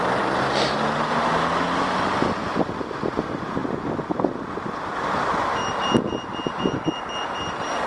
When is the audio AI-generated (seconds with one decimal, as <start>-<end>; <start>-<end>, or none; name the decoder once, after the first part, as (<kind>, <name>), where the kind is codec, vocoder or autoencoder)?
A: none